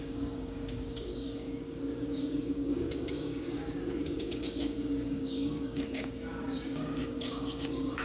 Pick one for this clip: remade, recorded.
remade